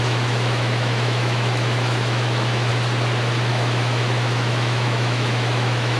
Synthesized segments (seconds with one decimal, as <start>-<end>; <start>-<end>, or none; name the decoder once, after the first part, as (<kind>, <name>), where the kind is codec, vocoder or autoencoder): 0.0-2.7 (autoencoder, DAC-VAE); 3.5-6.0